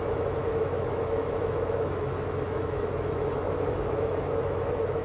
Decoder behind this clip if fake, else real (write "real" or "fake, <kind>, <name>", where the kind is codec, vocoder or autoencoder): fake, autoencoder, DAC-VAE